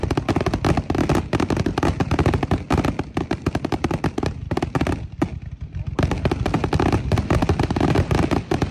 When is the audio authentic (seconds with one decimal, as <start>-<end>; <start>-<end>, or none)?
0.0-8.7